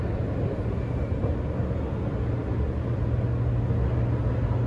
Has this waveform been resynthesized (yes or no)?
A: no